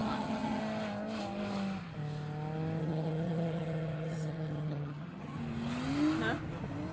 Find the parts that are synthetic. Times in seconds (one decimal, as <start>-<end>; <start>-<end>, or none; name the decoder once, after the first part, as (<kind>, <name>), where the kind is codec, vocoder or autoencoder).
0.0-0.6 (vocoder, HiFi-GAN); 2.8-5.4